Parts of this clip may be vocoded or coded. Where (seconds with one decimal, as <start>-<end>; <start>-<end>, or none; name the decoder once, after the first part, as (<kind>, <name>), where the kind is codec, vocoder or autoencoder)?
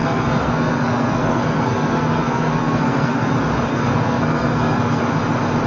0.0-3.3 (codec, SNAC); 3.7-5.0